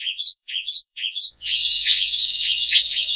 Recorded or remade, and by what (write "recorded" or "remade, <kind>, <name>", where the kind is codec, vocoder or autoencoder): remade, vocoder, Vocos